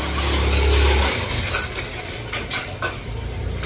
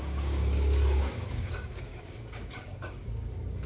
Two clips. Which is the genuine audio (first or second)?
first